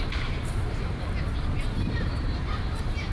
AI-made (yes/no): yes